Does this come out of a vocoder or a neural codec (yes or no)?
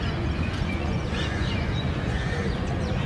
yes